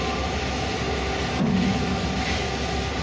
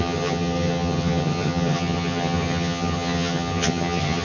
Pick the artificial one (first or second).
second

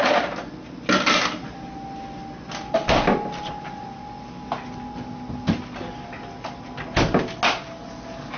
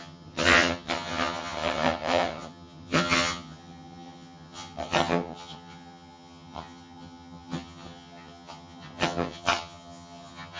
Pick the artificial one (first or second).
second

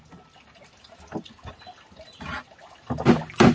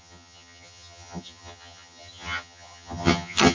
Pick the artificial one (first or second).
second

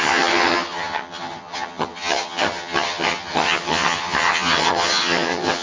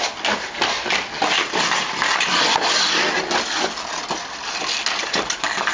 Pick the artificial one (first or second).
first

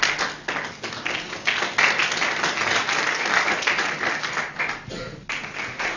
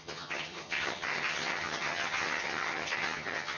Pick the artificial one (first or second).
second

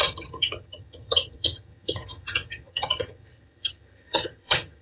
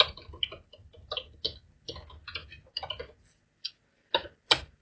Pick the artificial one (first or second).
first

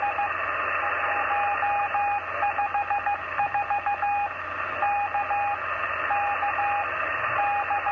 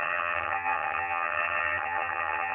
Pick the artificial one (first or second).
second